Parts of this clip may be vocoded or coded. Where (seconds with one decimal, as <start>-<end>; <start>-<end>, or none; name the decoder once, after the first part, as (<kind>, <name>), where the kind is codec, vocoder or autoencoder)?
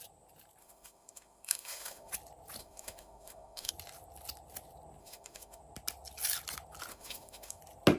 0.6-2.1 (autoencoder, DAC-VAE); 2.6-3.7; 5.0-5.6; 6.9-7.6